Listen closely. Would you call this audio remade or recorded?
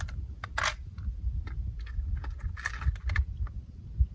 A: recorded